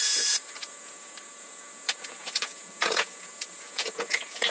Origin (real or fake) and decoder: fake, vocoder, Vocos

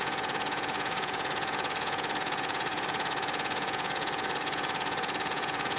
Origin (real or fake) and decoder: fake, vocoder, Vocos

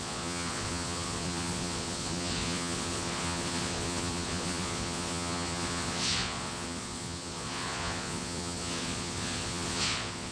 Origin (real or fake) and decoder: fake, vocoder, Vocos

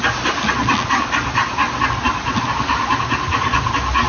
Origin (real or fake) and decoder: real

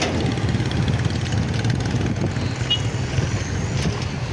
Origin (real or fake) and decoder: real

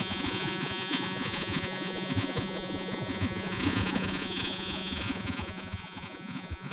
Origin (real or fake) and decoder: fake, vocoder, Vocos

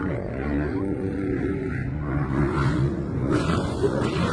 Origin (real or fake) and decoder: fake, vocoder, Vocos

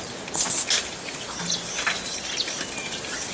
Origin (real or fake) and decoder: real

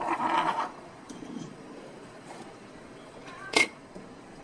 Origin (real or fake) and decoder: fake, vocoder, Vocos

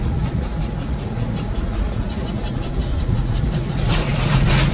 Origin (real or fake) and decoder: fake, vocoder, Vocos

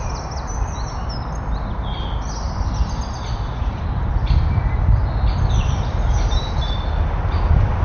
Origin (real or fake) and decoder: real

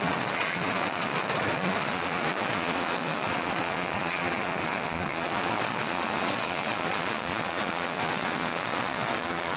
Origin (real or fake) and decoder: fake, vocoder, Vocos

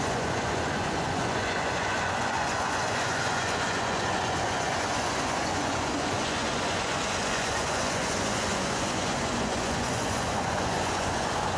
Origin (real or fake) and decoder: fake, vocoder, Vocos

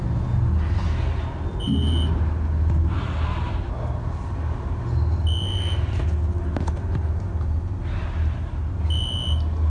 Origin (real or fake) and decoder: real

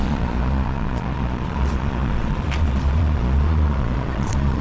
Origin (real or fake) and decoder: fake, vocoder, Vocos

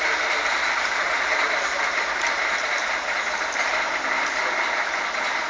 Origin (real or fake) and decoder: real